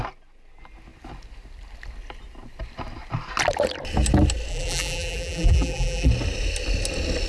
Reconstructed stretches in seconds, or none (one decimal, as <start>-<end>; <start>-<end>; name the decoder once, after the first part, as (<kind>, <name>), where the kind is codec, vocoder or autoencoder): 4.5-6.1 (vocoder, BigVGAN v2)